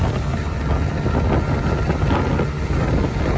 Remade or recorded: recorded